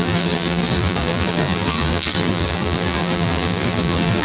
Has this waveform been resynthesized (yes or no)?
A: yes